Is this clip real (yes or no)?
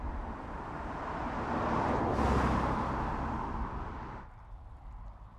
yes